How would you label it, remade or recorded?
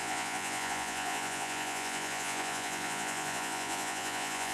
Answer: remade